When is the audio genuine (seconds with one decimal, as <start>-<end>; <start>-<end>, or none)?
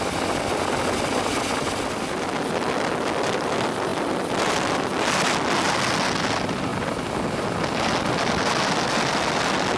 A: 0.0-9.8